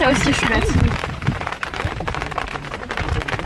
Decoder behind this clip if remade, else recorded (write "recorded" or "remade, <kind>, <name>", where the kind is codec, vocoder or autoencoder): remade, vocoder, BigVGAN v2